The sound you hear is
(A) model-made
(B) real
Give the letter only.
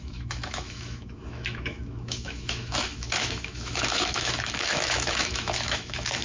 A